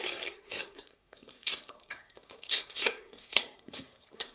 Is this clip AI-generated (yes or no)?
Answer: yes